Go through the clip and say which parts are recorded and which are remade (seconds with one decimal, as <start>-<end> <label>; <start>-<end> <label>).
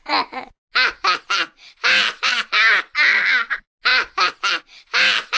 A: 0.0-5.4 recorded